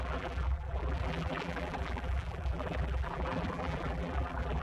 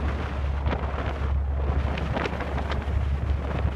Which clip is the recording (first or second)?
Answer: second